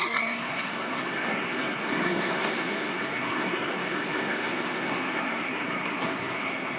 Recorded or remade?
remade